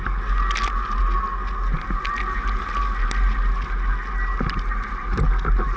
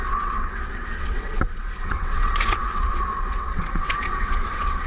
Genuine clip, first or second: first